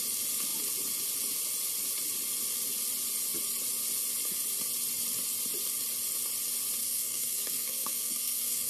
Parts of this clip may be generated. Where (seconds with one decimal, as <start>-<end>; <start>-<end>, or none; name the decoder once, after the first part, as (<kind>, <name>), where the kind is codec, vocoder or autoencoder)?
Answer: 6.8-8.7 (codec, SNAC)